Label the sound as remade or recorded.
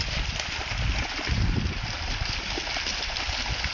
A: recorded